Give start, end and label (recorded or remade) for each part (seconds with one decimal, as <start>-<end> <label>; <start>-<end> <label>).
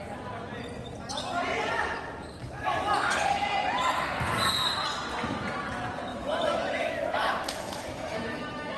0.0-6.1 recorded; 6.1-8.8 remade